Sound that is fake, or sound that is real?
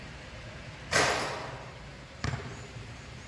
fake